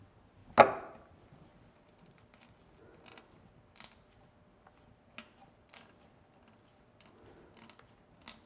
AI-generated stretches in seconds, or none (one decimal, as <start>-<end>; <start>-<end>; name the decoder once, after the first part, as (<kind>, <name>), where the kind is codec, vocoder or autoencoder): none